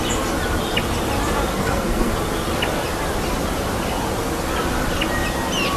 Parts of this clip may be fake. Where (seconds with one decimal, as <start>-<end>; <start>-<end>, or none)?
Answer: 1.5-2.1

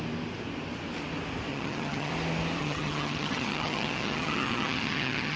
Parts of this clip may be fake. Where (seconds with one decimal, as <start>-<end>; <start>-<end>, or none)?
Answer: 1.5-2.1; 2.6-5.4

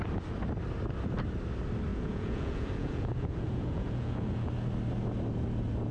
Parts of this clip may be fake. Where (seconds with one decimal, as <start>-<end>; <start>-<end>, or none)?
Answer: 1.9-4.5

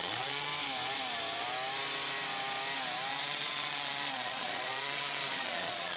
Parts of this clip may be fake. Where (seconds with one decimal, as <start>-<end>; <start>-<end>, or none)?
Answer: 0.0-0.5; 3.1-6.0

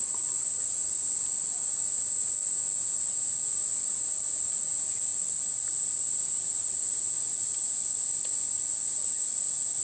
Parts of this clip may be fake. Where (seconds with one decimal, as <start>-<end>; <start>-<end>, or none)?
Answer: 0.0-0.8; 4.4-5.1; 6.2-7.6

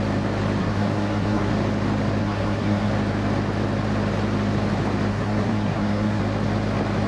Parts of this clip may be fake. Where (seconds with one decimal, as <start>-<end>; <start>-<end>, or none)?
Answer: 0.6-1.5; 2.2-2.9; 5.1-6.2

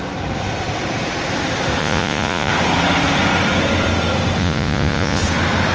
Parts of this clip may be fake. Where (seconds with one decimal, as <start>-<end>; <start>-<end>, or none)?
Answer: 1.8-2.5; 4.4-5.2